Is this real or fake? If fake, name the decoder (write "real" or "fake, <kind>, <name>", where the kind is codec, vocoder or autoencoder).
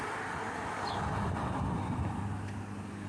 real